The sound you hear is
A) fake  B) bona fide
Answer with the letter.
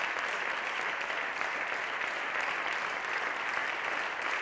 B